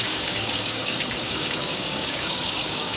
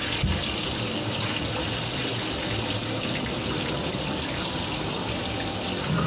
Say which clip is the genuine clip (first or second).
second